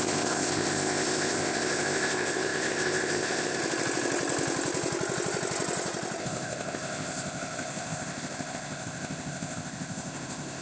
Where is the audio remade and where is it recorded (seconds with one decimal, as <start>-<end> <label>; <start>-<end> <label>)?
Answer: 0.0-3.6 remade; 3.6-6.2 recorded; 6.2-10.6 remade